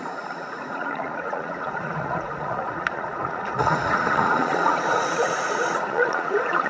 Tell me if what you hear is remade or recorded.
remade